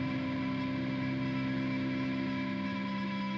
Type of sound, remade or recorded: recorded